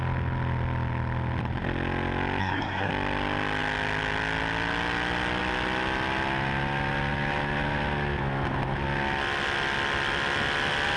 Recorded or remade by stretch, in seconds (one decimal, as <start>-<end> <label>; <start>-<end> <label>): 0.0-2.4 recorded; 2.4-2.9 remade; 2.9-11.0 recorded